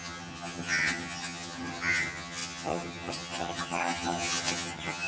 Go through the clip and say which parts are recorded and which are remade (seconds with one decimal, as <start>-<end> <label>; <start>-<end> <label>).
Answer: 0.0-5.1 remade